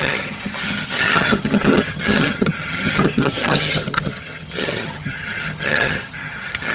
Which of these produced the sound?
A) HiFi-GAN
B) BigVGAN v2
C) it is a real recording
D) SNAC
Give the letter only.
A